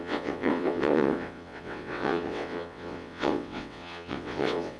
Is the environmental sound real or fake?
fake